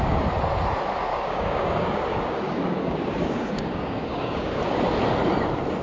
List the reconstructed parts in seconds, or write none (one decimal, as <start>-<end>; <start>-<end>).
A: 1.1-4.6

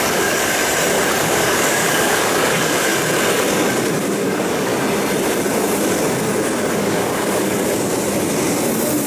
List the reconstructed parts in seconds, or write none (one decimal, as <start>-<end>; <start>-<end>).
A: 0.0-0.6; 1.2-2.9; 4.0-4.7; 6.7-7.9

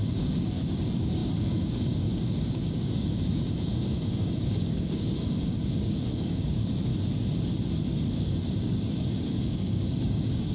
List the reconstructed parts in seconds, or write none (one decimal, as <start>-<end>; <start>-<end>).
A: 0.0-6.9; 8.1-10.5

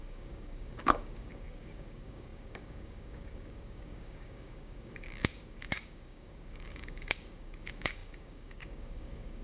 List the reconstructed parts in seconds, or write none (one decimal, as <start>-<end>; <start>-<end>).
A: 0.0-9.4

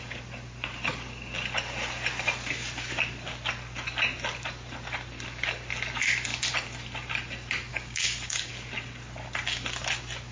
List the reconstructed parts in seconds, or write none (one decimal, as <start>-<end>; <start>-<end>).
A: 7.7-8.5

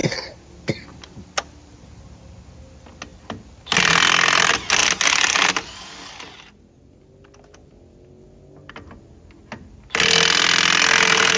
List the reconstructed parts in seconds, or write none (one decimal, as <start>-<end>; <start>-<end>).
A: none

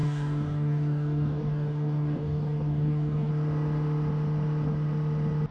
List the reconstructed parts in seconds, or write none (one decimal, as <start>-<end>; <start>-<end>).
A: 0.0-3.3

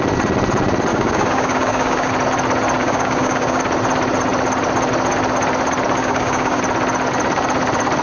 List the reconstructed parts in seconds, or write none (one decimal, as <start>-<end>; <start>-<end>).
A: 0.9-2.1; 2.8-3.6; 6.0-6.6